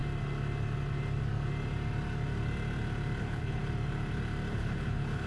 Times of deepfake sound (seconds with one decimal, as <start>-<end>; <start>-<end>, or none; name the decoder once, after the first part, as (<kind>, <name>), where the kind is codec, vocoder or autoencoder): 3.2-3.6 (codec, HILCodec); 4.5-5.3